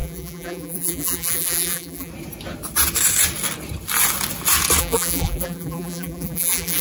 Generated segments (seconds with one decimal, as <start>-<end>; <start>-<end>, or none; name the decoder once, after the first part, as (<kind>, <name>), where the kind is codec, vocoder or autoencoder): 0.0-2.1 (vocoder, BigVGAN v2); 4.8-6.8